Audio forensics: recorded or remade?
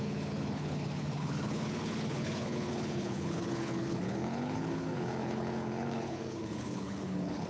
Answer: remade